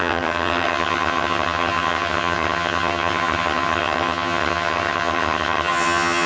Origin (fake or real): fake